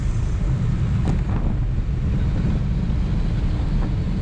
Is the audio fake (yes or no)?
no